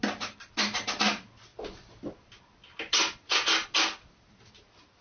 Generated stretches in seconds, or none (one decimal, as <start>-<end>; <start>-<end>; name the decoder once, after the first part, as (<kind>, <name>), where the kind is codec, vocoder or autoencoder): none

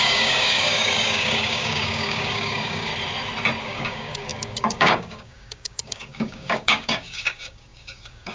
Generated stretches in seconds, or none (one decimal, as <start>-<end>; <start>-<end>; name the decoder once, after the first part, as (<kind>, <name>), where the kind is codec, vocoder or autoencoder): 0.0-2.9 (codec, DAC); 3.6-8.3

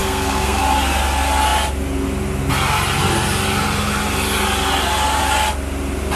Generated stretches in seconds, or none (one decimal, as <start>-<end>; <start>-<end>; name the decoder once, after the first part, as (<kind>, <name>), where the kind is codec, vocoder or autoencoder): 0.0-0.6 (codec, SNAC)

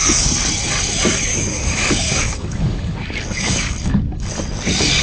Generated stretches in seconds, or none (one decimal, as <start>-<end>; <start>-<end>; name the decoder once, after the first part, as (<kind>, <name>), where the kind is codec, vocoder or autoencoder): 1.3-4.3 (codec, DAC)

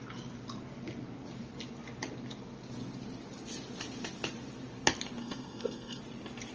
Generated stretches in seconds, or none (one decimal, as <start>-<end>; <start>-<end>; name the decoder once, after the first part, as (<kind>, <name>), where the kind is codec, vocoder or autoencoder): 5.2-6.0 (codec, SNAC)

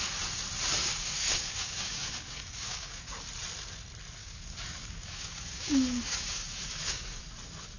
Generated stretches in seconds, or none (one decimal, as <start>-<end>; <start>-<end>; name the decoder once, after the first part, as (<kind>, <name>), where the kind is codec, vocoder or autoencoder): 0.8-3.2 (codec, DAC); 4.2-7.2